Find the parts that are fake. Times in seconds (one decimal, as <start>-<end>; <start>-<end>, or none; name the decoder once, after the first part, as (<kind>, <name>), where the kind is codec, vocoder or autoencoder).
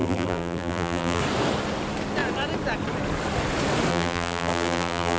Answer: 0.0-1.2 (vocoder, BigVGAN v2); 3.9-5.2